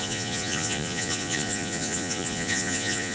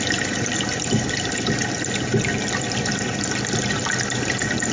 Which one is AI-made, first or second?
first